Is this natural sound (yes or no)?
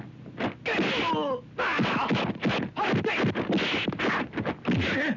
yes